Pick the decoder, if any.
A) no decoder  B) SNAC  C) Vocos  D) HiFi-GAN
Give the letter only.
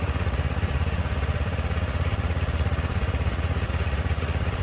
C